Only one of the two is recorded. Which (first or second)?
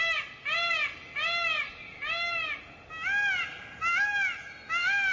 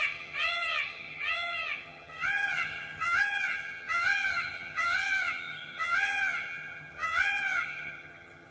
first